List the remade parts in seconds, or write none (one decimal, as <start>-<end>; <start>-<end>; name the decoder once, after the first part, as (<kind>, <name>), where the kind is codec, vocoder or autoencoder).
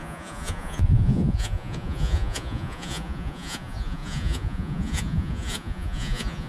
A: 0.0-6.5 (vocoder, Vocos)